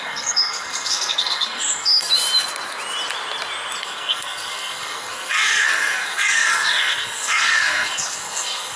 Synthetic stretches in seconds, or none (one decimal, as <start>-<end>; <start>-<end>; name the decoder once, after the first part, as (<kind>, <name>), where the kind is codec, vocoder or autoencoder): 0.0-2.1 (codec, SNAC); 3.8-8.8